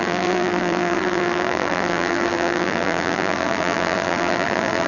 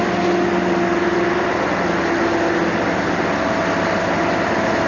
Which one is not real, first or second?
first